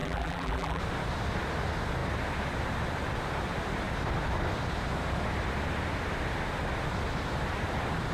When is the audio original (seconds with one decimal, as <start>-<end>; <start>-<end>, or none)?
0.8-8.1